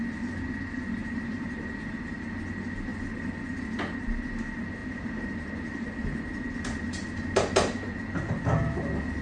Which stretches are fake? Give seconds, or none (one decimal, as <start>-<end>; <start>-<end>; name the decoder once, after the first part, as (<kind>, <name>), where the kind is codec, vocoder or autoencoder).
1.0-1.7 (vocoder, BigVGAN v2); 4.8-5.5; 6.9-8.0